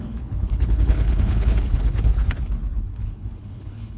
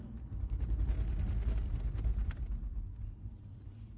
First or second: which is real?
second